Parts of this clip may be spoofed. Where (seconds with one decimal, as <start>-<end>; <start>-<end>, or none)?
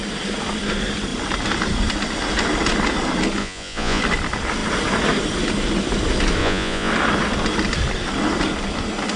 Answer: 3.4-4.0; 6.4-6.9